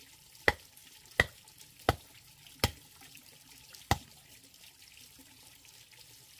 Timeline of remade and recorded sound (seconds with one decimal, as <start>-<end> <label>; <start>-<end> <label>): 0.0-6.4 recorded